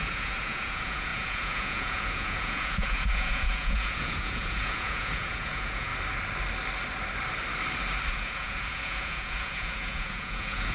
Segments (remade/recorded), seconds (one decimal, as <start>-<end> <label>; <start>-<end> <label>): 0.0-5.9 remade; 5.9-8.1 recorded; 8.1-10.7 remade